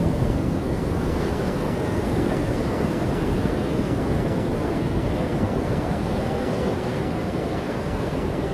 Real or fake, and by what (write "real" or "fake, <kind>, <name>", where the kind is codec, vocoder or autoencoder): fake, codec, SNAC